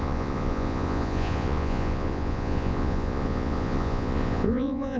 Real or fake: fake